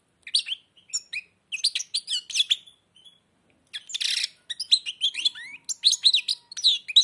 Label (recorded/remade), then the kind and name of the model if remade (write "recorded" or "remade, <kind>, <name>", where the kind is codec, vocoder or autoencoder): recorded